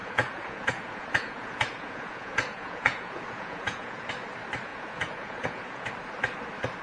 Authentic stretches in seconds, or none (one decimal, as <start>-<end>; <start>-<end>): 4.1-4.7; 5.9-6.8